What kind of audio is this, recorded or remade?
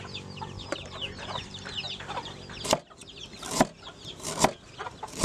remade